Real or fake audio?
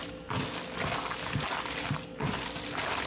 real